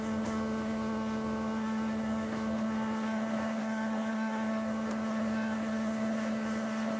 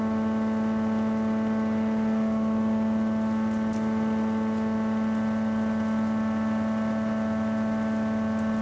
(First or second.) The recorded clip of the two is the second